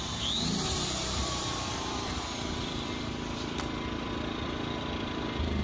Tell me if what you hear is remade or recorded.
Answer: remade